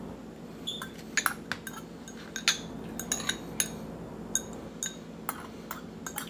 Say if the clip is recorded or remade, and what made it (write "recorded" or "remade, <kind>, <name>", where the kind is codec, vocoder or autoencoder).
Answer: recorded